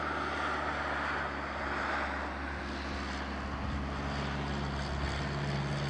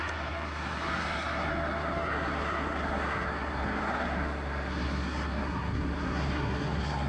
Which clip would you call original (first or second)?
first